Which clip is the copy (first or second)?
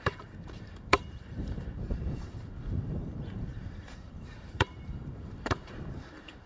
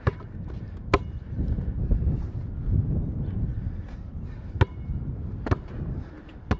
first